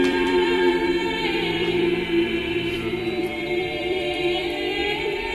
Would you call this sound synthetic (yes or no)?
yes